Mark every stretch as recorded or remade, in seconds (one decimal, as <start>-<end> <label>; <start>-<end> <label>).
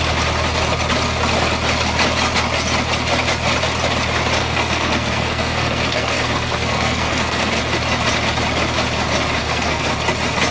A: 0.0-4.4 recorded; 4.4-7.6 remade; 7.6-9.4 recorded; 9.4-9.9 remade; 9.9-10.5 recorded